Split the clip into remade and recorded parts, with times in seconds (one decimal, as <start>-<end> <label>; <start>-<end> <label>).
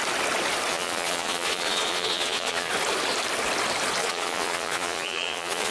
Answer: 0.0-0.7 recorded; 0.7-2.7 remade; 2.7-4.0 recorded; 4.0-5.7 remade